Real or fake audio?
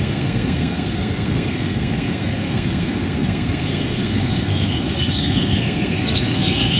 fake